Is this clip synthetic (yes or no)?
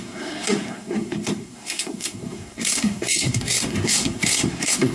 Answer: yes